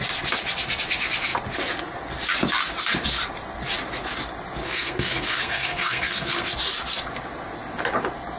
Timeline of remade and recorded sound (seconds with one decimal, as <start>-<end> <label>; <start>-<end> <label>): 0.0-4.6 recorded; 4.6-6.5 remade; 6.5-8.4 recorded